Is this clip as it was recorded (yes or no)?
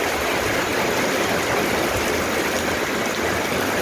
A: yes